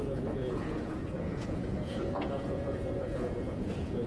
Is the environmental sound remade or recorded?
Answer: remade